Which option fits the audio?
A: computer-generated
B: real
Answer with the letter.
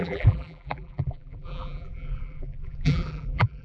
A